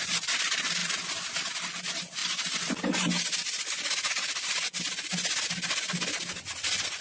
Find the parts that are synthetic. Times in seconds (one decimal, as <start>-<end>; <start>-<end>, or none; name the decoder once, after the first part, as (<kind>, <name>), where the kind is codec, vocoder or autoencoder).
none